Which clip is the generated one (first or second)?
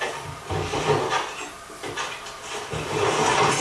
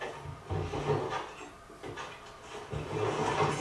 first